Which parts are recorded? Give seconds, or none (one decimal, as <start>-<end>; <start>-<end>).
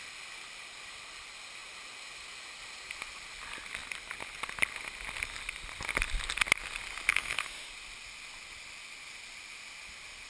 0.0-7.1; 7.7-10.3